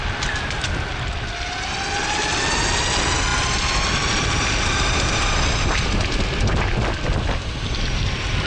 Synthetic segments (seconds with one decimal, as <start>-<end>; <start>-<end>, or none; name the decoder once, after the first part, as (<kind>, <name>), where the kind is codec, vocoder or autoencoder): none